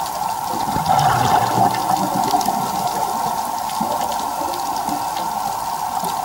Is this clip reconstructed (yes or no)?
no